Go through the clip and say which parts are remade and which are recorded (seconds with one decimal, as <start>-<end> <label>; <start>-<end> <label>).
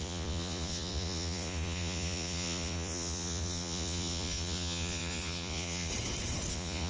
0.0-5.9 remade; 5.9-6.5 recorded; 6.5-6.9 remade